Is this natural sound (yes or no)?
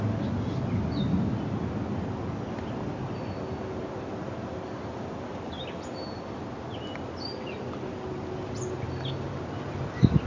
yes